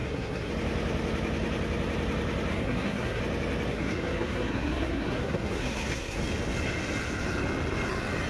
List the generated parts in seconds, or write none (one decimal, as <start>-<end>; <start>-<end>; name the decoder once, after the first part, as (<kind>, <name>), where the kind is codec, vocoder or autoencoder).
0.0-0.5 (codec, SNAC); 2.5-3.2; 3.7-6.2